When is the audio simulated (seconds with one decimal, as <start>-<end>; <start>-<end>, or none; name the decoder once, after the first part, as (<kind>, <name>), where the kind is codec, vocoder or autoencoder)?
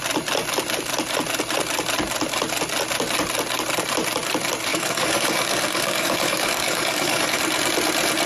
4.7-7.4 (codec, DAC)